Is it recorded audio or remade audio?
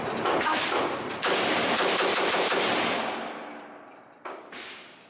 recorded